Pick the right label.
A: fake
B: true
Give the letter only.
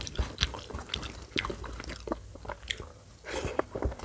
B